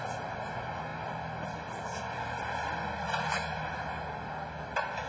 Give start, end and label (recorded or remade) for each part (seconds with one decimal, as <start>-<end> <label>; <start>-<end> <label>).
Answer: 0.0-5.1 recorded